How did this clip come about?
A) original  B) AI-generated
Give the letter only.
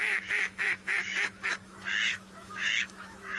B